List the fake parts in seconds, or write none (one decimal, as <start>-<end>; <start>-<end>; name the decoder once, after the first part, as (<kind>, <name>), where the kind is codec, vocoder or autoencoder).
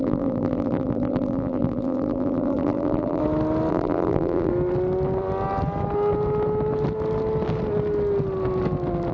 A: 0.0-3.2 (vocoder, BigVGAN v2); 3.7-4.5